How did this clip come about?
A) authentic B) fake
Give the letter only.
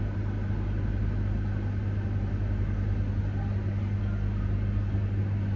A